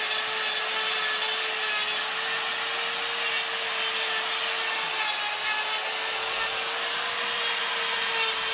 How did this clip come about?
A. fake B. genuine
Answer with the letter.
B